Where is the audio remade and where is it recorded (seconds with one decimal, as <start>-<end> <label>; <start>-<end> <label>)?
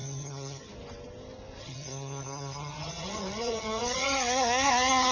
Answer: 0.0-0.7 remade; 0.7-1.6 recorded; 1.6-5.1 remade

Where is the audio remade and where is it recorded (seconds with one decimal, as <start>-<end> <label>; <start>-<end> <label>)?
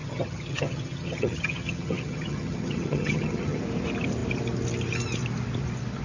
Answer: 0.0-3.6 remade; 3.6-6.0 recorded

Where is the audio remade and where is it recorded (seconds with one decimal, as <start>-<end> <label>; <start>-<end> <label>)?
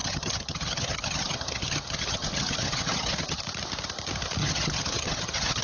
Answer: 0.0-3.4 remade; 3.4-4.4 recorded; 4.4-5.6 remade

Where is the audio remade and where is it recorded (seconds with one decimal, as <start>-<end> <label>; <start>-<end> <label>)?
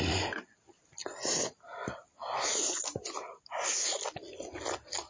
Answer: 0.0-5.1 recorded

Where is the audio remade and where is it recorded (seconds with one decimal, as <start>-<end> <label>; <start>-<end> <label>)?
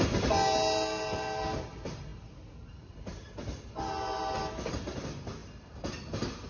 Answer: 0.0-6.5 recorded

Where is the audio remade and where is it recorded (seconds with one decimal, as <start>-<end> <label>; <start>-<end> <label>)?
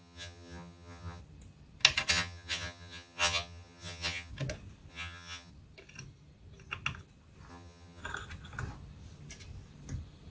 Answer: 0.0-1.2 remade; 1.2-2.1 recorded; 2.1-4.3 remade; 4.3-4.9 recorded; 4.9-5.5 remade; 5.5-7.5 recorded; 7.5-8.0 remade; 8.0-10.3 recorded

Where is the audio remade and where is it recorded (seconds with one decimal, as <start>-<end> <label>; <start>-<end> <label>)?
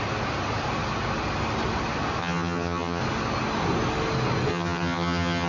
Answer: 0.0-2.2 recorded; 2.2-3.0 remade; 3.0-4.5 recorded; 4.5-5.5 remade